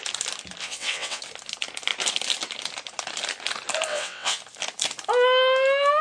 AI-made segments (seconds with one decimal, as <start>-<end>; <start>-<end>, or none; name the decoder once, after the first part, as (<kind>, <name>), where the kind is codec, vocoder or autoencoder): 0.6-1.2 (vocoder, WaveNeXt); 3.9-4.4

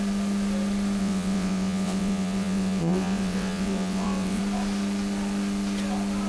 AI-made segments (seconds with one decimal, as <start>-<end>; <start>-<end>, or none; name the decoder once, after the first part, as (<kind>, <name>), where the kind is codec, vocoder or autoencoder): 1.0-4.4 (vocoder, WaveNeXt)

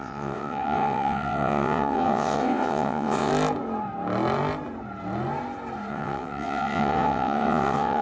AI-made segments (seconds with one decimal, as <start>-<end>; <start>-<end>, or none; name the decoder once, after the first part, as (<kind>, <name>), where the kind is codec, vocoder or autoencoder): 0.0-3.3 (vocoder, WaveNeXt); 5.9-8.0

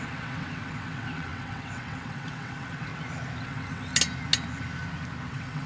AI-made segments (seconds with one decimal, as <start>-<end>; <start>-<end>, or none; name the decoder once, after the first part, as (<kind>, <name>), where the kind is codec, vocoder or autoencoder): 0.0-2.9 (vocoder, WaveNeXt); 3.4-3.9; 5.3-5.7

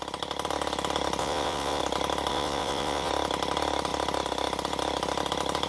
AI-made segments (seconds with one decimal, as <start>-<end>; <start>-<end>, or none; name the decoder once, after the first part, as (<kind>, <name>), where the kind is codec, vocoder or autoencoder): 1.2-1.8 (vocoder, WaveNeXt); 2.3-3.1

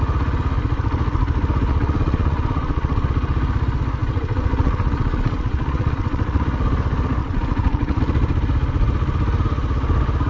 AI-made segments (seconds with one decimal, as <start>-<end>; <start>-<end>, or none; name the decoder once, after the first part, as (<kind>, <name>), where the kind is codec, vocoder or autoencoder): 1.7-3.1 (vocoder, WaveNeXt); 4.0-6.4; 7.2-8.0